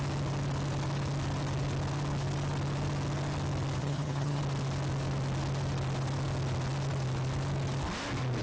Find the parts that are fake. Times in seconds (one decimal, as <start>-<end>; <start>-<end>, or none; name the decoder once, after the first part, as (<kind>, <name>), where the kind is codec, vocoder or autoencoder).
3.8-4.4 (vocoder, HiFi-GAN)